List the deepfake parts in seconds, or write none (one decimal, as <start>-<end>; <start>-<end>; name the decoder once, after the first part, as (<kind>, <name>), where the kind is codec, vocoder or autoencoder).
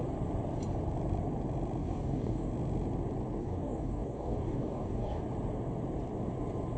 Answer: 1.8-2.5 (codec, DAC); 3.4-5.2